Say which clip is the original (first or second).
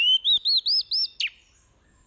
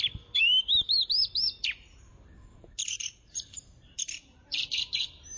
first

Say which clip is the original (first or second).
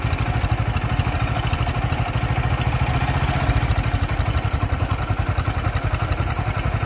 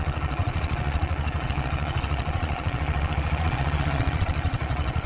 first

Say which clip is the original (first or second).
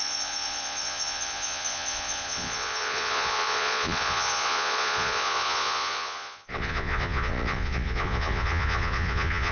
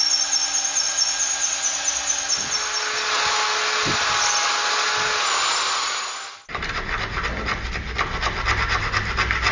second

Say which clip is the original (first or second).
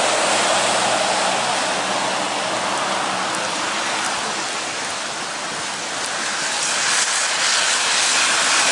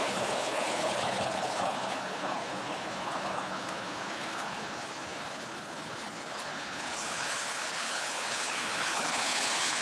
first